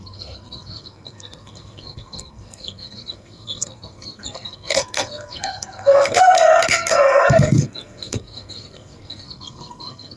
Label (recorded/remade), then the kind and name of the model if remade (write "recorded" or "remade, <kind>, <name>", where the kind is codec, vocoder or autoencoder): remade, codec, SNAC